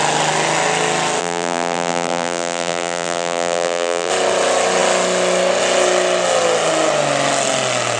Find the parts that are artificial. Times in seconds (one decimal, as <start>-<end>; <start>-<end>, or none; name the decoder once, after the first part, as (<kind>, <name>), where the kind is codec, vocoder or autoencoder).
1.2-4.1 (vocoder, BigVGAN v2)